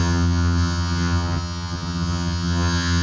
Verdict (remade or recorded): remade